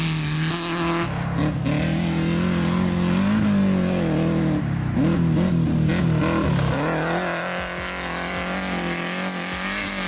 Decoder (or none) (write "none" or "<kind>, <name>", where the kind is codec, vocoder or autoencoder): none